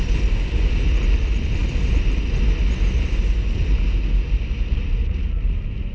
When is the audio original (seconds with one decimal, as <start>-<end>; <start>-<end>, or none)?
0.0-5.9